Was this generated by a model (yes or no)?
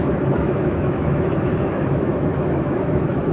yes